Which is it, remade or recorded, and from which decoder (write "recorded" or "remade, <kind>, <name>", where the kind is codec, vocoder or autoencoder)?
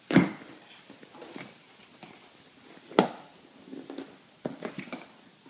recorded